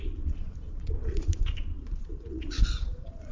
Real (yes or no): no